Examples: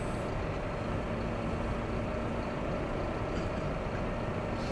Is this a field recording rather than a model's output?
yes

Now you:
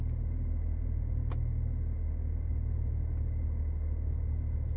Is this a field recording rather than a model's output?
yes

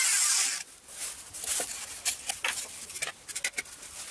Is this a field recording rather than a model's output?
yes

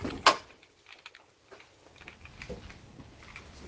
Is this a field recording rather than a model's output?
yes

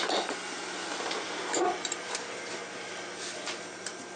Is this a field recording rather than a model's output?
yes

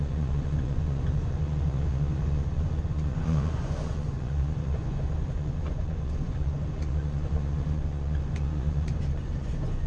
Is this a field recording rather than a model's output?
no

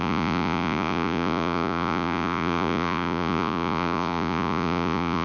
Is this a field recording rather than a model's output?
no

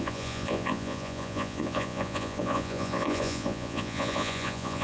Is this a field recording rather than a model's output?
no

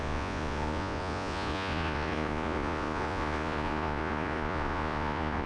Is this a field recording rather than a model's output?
no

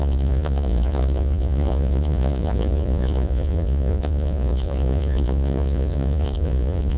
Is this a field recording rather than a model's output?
no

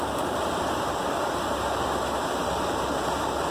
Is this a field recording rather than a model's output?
yes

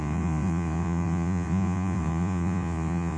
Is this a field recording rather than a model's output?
no